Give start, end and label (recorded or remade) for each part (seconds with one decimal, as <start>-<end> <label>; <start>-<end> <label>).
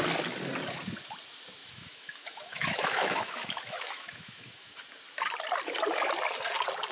0.0-1.6 recorded; 1.6-4.8 remade; 4.8-6.9 recorded